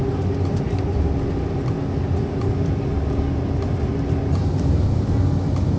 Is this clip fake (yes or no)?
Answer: no